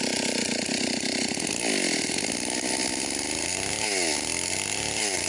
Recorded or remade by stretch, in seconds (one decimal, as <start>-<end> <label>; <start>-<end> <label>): 0.0-5.3 recorded